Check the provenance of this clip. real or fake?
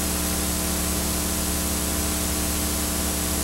real